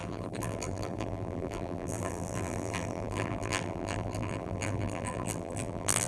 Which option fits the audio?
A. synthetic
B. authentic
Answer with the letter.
A